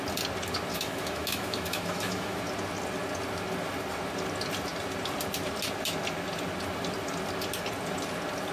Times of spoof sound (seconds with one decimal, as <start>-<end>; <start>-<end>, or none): 0.7-2.4